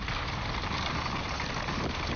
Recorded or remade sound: recorded